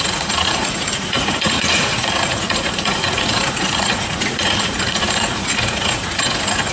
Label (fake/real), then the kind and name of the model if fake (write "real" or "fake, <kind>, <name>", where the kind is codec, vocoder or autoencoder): fake, vocoder, Vocos